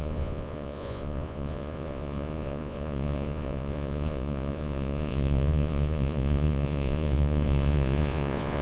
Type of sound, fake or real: fake